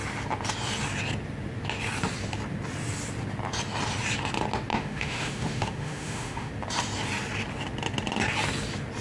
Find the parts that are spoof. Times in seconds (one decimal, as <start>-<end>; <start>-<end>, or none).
4.7-6.5